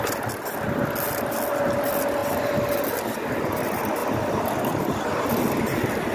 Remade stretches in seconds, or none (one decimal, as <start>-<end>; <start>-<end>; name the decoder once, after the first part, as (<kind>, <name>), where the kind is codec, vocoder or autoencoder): none